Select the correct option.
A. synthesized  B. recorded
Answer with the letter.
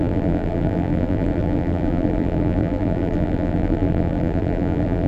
A